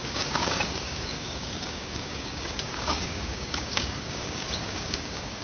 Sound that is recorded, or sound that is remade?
remade